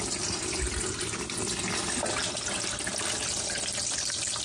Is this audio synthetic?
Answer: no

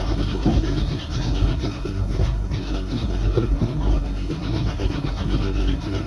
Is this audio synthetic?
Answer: yes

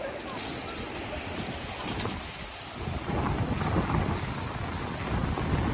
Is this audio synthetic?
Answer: no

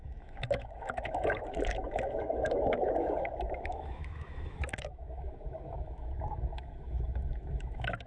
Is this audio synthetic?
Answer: yes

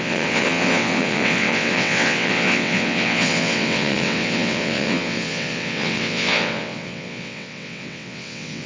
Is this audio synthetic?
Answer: yes